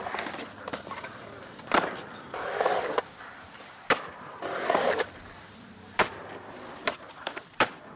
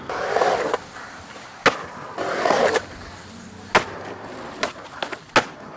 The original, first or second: second